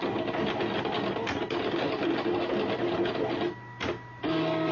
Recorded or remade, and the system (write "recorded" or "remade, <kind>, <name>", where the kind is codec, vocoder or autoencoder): recorded